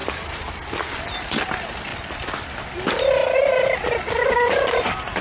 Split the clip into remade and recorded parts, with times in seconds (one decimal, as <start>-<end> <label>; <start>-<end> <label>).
0.0-1.9 recorded; 1.9-2.7 remade; 2.7-3.2 recorded; 3.2-4.6 remade; 4.6-5.2 recorded